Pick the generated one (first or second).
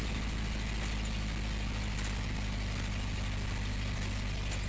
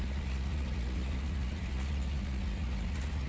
second